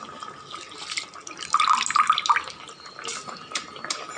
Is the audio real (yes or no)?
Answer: yes